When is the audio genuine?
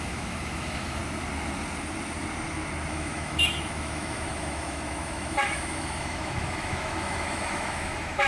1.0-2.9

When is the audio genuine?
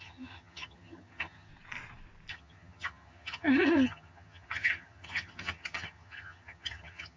1.5-2.3